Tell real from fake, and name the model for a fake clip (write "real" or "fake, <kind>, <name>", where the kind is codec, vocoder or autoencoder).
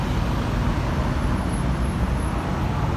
real